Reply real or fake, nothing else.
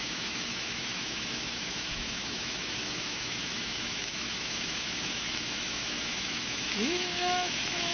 fake